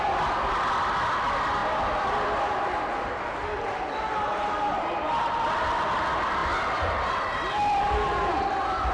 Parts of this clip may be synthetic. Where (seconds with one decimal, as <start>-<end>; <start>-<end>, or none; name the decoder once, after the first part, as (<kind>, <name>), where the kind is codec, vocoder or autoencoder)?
none